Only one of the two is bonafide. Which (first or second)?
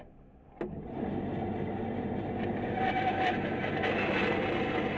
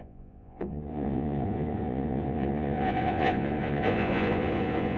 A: first